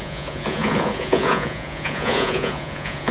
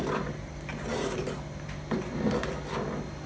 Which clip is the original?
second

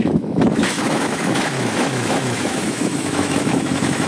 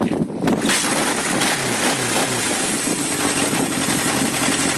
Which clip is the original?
second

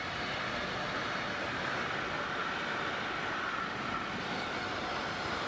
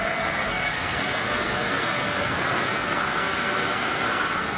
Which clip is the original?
first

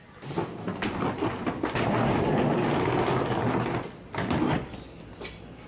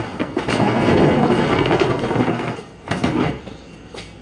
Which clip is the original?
first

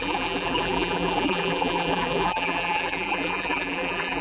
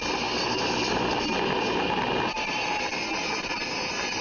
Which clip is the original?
second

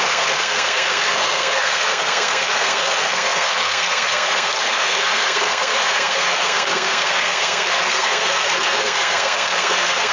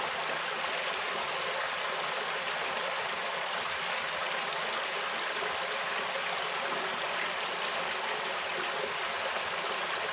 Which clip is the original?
second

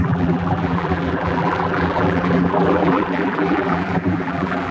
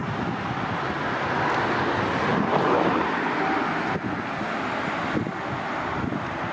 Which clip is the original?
second